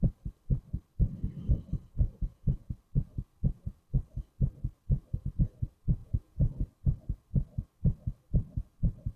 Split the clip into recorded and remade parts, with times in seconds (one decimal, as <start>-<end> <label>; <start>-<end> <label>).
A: 0.0-1.8 recorded; 1.8-2.7 remade; 2.7-6.0 recorded; 6.0-6.5 remade; 6.5-9.2 recorded